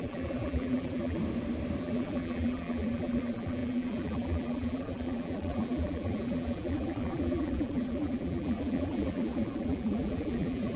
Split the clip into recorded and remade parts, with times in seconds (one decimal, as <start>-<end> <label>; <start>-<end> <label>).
0.0-1.2 remade; 1.2-1.8 recorded; 1.8-10.8 remade